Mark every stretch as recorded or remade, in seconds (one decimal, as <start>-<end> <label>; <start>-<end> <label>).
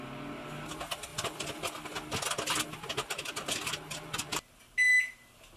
0.0-5.6 recorded